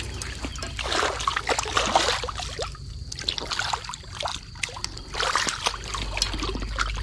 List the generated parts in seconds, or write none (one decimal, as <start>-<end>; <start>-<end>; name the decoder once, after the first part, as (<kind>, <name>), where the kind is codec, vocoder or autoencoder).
none